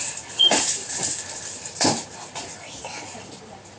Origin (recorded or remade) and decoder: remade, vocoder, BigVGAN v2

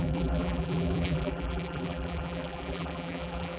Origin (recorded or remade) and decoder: remade, vocoder, BigVGAN v2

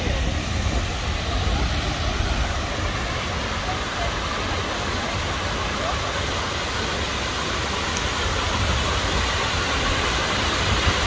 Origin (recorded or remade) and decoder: recorded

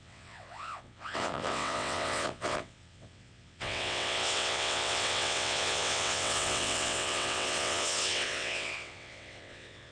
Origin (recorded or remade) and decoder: remade, vocoder, WaveNeXt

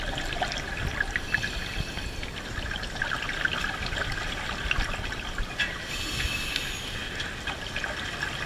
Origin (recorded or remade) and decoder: recorded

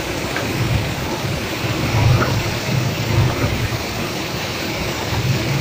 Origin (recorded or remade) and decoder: remade, codec, DAC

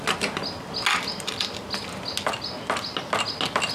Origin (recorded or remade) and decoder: recorded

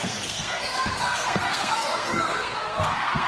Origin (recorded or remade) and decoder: remade, codec, SNAC